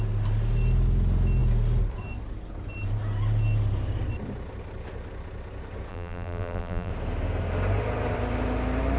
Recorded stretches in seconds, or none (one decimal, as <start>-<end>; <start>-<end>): 0.0-5.9; 6.9-9.0